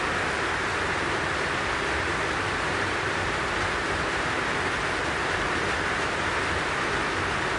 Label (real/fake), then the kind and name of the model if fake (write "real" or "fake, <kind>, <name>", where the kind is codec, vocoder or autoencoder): real